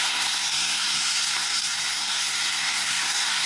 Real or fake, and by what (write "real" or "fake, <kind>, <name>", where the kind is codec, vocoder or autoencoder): fake, codec, SNAC